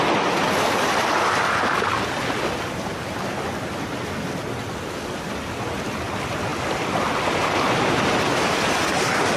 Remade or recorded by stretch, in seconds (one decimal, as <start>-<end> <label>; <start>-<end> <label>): 0.0-9.4 recorded